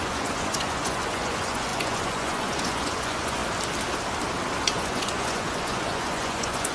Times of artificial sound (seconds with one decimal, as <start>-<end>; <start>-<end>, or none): 0.0-3.4; 4.6-6.7